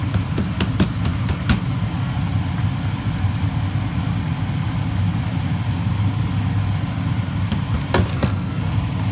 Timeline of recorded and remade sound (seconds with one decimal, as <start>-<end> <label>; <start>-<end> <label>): 0.0-8.1 recorded; 8.1-8.6 remade; 8.6-9.1 recorded